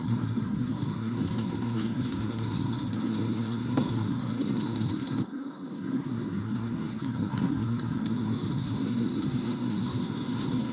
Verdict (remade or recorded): remade